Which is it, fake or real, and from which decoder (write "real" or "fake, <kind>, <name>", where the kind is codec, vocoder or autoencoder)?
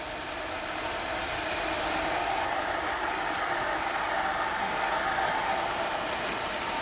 real